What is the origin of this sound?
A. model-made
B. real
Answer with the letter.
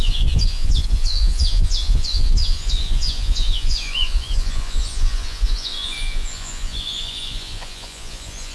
A